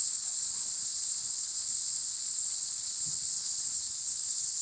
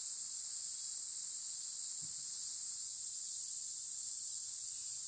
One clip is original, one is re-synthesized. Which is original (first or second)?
second